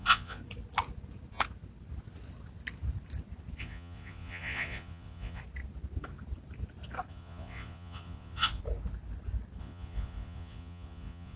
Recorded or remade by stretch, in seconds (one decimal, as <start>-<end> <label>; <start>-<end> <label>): 0.0-0.4 remade; 0.4-3.6 recorded; 3.6-5.4 remade; 5.4-7.1 recorded; 7.1-8.6 remade; 8.6-9.6 recorded; 9.6-11.4 remade

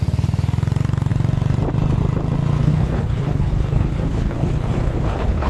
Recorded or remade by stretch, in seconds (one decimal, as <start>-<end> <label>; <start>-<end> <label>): 0.0-2.6 recorded; 2.6-5.5 remade

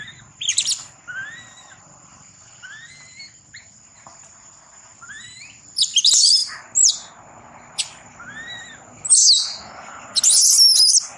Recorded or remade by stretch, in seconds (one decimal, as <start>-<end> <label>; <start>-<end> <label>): 0.0-0.5 recorded; 0.5-2.9 remade; 2.9-6.4 recorded; 6.4-6.9 remade; 6.9-7.8 recorded; 7.8-8.7 remade; 8.7-11.2 recorded

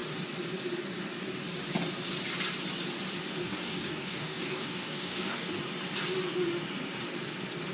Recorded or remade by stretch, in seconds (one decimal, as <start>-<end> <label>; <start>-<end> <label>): 0.0-3.4 recorded; 3.4-5.6 remade; 5.6-7.7 recorded

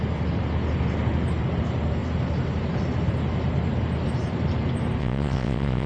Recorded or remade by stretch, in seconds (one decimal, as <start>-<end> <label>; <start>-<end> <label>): 0.0-5.0 recorded; 5.0-5.9 remade